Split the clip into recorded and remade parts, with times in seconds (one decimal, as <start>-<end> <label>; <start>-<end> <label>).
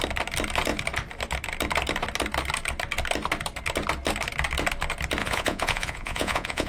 0.0-5.2 recorded; 5.2-6.7 remade